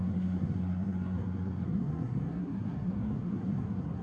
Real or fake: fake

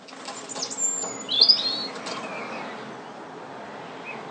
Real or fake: real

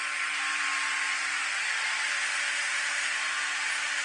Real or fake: real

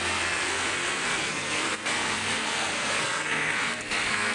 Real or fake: fake